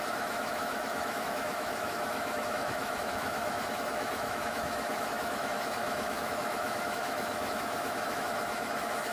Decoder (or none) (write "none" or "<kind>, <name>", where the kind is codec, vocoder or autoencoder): autoencoder, DAC-VAE